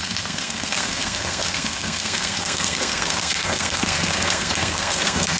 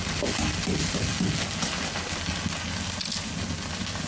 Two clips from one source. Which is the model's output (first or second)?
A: first